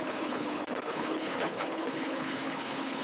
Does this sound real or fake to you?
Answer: fake